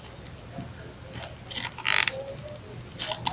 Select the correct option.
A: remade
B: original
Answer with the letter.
B